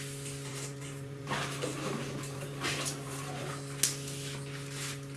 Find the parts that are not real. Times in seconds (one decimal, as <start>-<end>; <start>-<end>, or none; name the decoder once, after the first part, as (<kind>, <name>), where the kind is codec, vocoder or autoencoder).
0.5-3.5 (vocoder, BigVGAN v2)